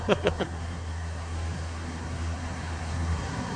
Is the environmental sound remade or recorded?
remade